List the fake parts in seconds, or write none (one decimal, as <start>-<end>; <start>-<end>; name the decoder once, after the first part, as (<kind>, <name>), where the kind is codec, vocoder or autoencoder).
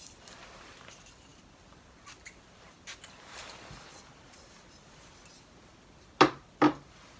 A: none